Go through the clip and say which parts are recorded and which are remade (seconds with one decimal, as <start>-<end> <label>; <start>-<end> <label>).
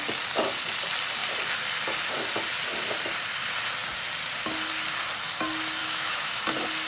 0.0-5.8 recorded; 5.8-6.4 remade; 6.4-6.9 recorded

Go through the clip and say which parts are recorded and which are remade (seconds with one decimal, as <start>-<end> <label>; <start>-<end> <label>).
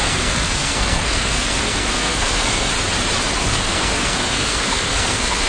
0.0-2.7 remade; 2.7-3.4 recorded; 3.4-5.5 remade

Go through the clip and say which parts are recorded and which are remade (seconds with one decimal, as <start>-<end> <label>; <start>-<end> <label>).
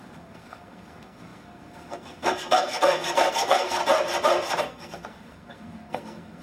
0.0-3.8 remade; 3.8-4.6 recorded; 4.6-6.4 remade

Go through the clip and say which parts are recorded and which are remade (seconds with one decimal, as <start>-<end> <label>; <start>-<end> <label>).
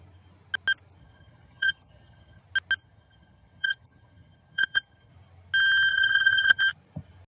0.0-1.0 recorded; 1.0-2.4 remade; 2.4-2.8 recorded; 2.8-5.1 remade; 5.1-5.9 recorded; 5.9-6.6 remade; 6.6-7.3 recorded